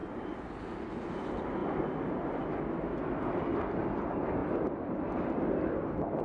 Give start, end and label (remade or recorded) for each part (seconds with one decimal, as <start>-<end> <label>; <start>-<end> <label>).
0.0-4.4 recorded; 4.4-5.7 remade; 5.7-6.2 recorded